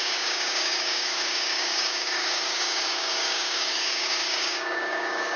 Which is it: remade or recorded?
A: remade